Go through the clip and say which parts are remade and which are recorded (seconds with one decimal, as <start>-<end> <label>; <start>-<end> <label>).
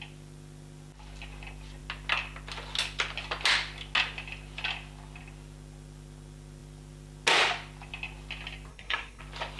0.0-8.7 recorded; 8.7-9.2 remade; 9.2-9.6 recorded